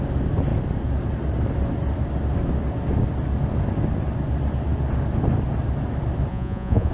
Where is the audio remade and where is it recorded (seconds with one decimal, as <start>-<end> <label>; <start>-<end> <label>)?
0.0-6.3 recorded; 6.3-6.9 remade